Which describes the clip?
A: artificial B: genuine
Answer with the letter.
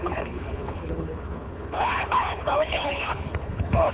A